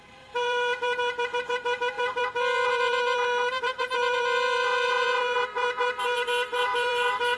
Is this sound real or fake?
fake